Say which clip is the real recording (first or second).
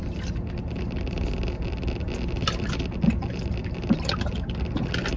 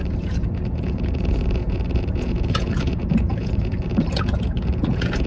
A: first